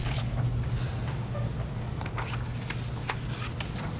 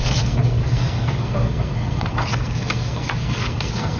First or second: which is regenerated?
second